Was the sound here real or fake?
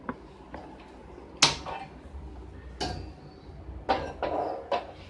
real